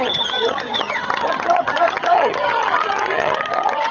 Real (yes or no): no